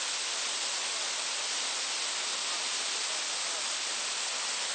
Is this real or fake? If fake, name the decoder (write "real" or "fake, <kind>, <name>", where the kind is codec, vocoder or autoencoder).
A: real